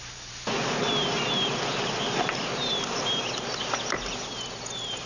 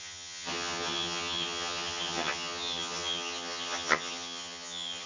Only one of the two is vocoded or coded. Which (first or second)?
second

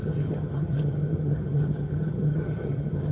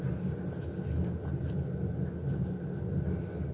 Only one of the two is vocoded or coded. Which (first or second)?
first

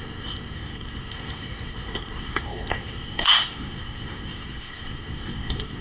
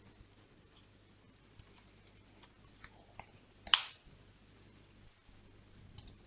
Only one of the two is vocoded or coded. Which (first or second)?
first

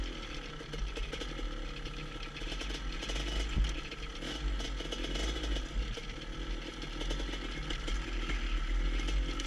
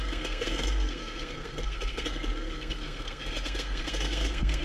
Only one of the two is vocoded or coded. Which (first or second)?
second